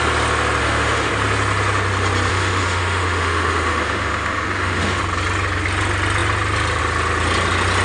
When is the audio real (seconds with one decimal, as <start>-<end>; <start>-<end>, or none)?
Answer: 0.0-0.6; 1.1-2.3; 5.0-7.8